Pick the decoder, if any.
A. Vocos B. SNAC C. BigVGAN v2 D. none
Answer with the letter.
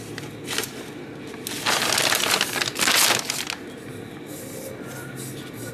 D